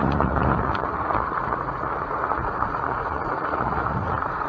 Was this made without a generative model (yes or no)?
no